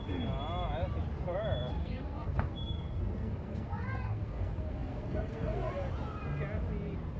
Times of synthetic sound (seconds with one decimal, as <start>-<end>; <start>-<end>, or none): 1.8-5.7